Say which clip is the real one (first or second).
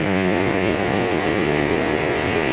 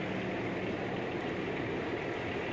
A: second